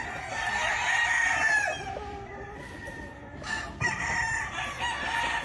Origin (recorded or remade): recorded